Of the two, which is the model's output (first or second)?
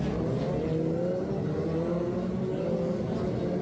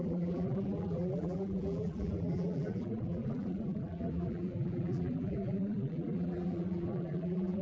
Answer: second